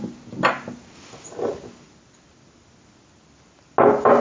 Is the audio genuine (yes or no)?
yes